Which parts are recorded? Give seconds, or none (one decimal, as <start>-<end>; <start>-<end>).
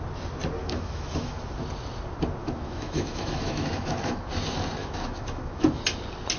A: 0.0-0.6; 1.4-2.4; 4.3-4.8; 5.8-6.4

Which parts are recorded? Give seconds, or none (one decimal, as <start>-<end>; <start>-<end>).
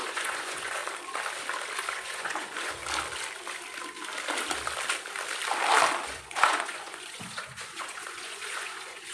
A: 0.8-1.9; 2.8-6.0